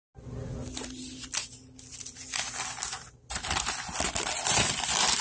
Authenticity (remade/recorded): recorded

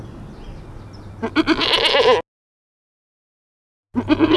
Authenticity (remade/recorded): recorded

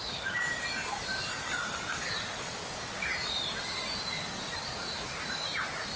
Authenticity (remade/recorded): recorded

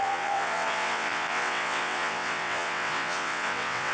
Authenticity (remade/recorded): remade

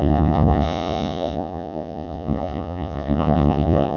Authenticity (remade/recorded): remade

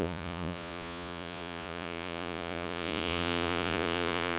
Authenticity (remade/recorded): remade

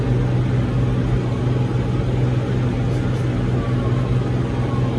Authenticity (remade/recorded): recorded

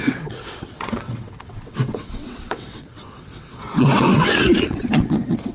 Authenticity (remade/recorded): remade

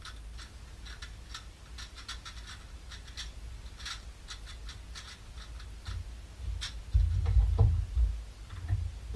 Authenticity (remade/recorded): recorded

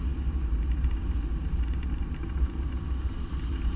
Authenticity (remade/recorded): recorded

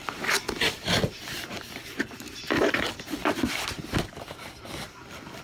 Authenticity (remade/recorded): remade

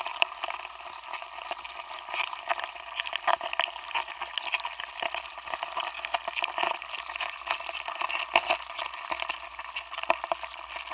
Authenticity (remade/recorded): recorded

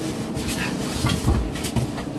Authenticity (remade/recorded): recorded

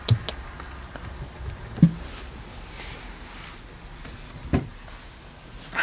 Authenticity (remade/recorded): recorded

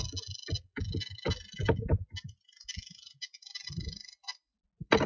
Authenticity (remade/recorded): recorded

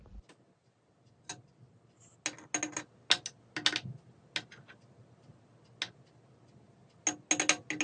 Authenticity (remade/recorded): recorded